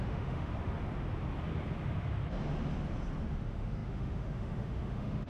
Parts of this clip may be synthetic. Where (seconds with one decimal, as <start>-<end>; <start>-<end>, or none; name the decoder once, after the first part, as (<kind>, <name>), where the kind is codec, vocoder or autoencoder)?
0.0-0.5 (autoencoder, DAC-VAE); 3.3-5.3

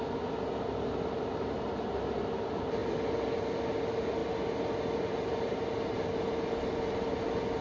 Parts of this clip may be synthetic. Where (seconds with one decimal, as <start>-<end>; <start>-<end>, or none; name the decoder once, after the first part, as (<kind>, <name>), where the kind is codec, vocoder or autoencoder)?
none

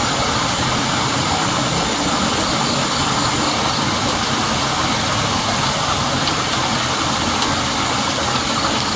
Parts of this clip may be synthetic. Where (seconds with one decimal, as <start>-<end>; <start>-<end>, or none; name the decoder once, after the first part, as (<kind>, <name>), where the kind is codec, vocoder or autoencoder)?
none